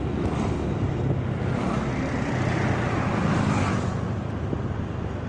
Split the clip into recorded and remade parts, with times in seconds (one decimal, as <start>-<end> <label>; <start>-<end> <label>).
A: 0.0-5.3 recorded